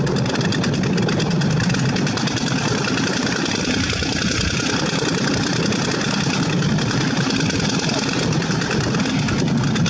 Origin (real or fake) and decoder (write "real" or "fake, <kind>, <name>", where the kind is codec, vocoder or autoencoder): real